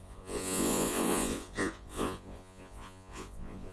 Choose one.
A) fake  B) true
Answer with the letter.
A